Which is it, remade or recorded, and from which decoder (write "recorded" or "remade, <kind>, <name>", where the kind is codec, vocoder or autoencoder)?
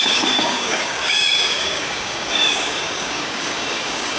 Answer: remade, codec, DAC